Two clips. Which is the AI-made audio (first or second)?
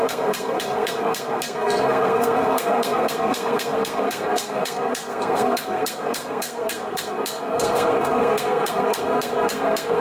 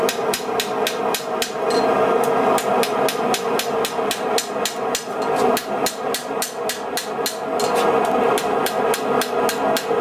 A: first